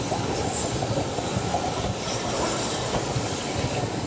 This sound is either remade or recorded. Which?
recorded